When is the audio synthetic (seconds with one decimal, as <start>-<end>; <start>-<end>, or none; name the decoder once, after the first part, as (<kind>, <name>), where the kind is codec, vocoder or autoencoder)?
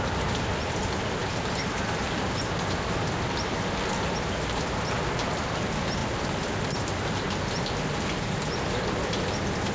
none